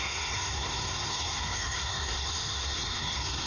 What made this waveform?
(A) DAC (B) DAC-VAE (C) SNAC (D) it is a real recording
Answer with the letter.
C